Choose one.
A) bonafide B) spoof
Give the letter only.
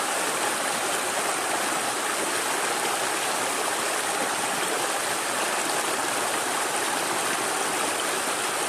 A